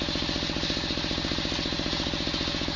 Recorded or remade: recorded